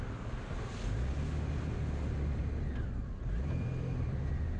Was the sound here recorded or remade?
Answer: recorded